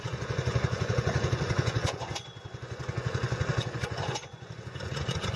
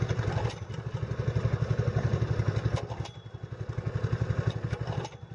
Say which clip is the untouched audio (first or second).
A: second